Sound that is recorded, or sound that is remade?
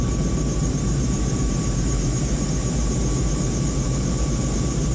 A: remade